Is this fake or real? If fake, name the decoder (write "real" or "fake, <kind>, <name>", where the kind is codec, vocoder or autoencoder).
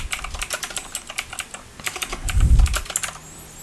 real